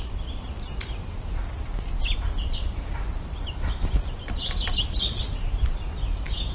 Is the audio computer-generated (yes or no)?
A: no